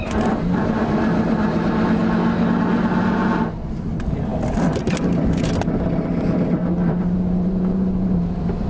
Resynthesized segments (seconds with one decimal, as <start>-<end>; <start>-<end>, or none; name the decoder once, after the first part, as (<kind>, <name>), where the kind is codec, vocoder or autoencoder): 0.0-2.0 (vocoder, BigVGAN v2); 3.7-4.3; 6.9-8.7

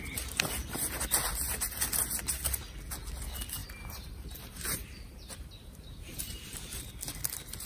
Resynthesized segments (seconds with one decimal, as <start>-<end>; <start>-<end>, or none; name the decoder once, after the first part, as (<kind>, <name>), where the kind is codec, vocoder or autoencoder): 3.6-6.9 (vocoder, BigVGAN v2)

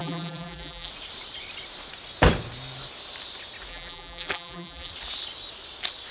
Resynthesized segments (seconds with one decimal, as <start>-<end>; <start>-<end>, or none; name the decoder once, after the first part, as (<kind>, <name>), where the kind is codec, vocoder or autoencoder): 0.0-0.9 (vocoder, BigVGAN v2); 3.7-4.9

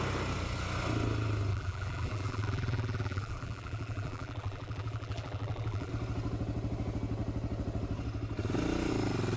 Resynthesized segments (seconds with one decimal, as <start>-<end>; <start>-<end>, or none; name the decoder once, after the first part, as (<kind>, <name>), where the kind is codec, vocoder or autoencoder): 1.5-5.9 (vocoder, BigVGAN v2)

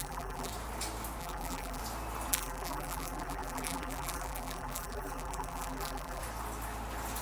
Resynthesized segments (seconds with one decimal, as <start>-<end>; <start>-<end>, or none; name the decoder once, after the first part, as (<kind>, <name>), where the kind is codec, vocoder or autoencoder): 0.0-0.5 (vocoder, BigVGAN v2); 1.2-1.8; 2.3-6.2

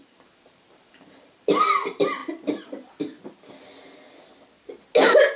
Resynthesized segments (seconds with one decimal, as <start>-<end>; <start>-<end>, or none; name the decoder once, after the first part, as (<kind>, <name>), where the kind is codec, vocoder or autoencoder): 0.0-2.2 (vocoder, BigVGAN v2)

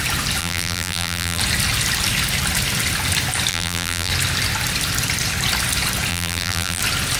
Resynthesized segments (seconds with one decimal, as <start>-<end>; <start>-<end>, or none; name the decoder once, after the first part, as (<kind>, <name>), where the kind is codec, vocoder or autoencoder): 0.4-1.4 (vocoder, BigVGAN v2); 3.5-4.1; 6.1-6.8

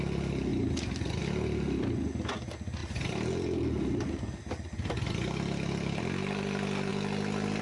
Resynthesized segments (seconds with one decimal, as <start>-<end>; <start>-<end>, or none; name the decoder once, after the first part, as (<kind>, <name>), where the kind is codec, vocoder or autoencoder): 2.8-6.0 (vocoder, BigVGAN v2)